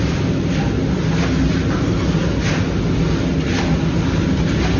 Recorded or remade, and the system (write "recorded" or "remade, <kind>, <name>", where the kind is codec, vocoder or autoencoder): recorded